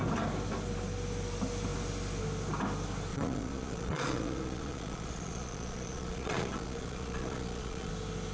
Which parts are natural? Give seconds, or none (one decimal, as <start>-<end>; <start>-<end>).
0.0-3.1; 7.9-8.3